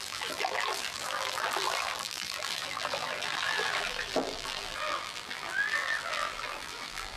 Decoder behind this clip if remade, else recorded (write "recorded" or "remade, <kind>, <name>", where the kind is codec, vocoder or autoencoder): remade, vocoder, BigVGAN v2